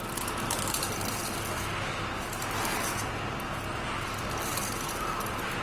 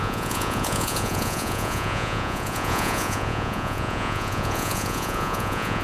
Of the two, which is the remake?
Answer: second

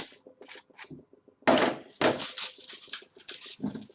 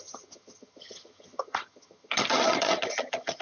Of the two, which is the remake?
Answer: second